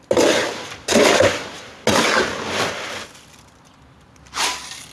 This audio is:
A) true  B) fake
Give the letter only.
A